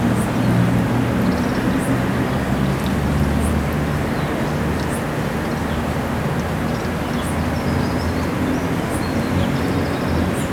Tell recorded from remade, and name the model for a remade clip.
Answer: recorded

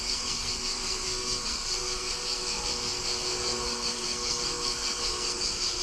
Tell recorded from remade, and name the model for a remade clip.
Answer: remade, codec, SNAC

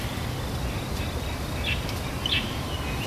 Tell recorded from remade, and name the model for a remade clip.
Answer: recorded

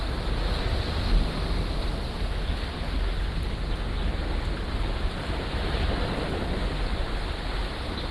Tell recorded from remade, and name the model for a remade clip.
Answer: recorded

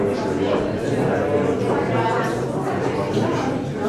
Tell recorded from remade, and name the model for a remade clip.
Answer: recorded